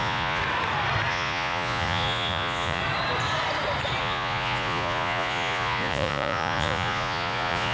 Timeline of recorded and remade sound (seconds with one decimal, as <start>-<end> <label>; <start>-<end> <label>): 0.0-0.4 remade; 0.4-1.1 recorded; 1.1-2.8 remade; 2.8-4.0 recorded; 4.0-7.7 remade